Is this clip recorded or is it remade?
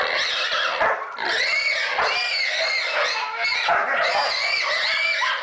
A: recorded